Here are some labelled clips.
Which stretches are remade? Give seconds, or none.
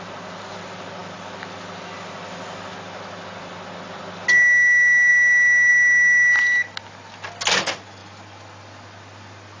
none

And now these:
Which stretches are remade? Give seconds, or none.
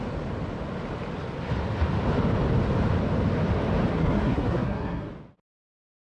3.9-5.1 (codec, SNAC)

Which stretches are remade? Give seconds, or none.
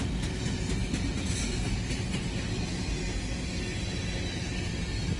none